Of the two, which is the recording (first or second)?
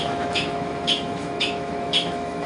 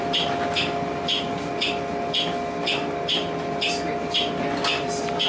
second